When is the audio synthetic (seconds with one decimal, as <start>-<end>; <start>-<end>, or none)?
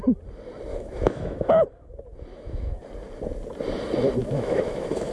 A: 0.7-1.5; 2.3-2.8; 4.2-5.1